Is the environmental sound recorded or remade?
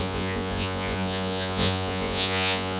remade